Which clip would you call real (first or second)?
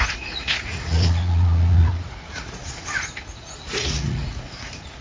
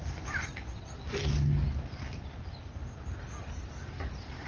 second